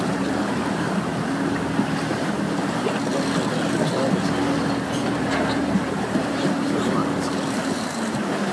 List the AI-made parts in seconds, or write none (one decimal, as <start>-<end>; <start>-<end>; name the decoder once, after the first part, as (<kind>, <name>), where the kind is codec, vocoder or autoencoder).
0.0-1.1 (vocoder, BigVGAN v2); 2.2-3.1; 5.2-7.0; 7.7-8.5